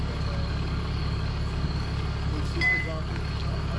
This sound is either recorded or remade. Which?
remade